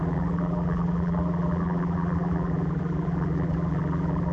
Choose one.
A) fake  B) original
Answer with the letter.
A